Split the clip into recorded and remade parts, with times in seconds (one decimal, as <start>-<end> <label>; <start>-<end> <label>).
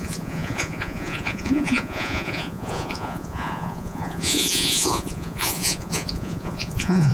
0.0-7.1 remade